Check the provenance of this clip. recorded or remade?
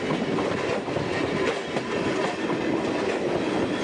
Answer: recorded